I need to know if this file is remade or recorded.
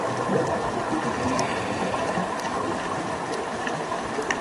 recorded